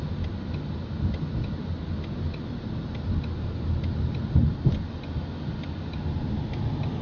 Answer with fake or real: real